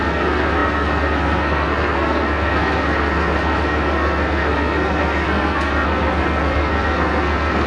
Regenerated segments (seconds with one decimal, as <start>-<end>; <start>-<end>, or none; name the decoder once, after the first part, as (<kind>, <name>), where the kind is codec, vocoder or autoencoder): 0.0-7.7 (codec, SNAC)